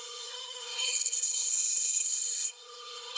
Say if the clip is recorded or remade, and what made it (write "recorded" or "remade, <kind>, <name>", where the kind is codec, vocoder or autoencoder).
remade, codec, SNAC